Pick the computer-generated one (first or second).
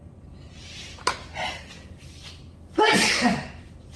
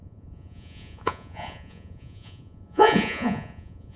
second